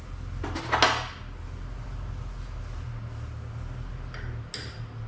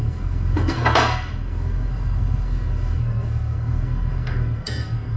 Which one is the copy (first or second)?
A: second